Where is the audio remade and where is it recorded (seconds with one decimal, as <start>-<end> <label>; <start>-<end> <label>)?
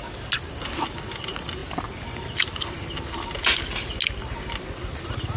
0.0-5.4 recorded